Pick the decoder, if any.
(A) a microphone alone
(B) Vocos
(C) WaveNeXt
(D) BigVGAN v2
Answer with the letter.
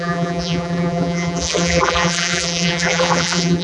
D